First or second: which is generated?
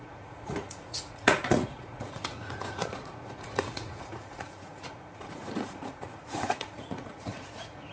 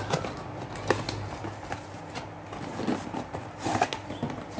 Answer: first